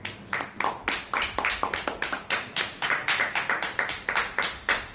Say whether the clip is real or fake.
real